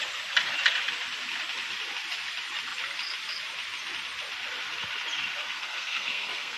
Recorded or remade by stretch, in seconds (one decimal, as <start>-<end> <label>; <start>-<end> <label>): 0.0-5.4 recorded; 5.4-6.6 remade